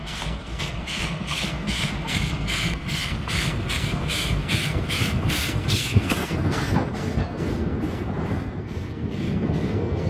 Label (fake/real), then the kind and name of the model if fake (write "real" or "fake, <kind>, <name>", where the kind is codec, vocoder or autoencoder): fake, codec, SNAC